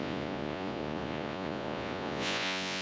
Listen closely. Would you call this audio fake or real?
fake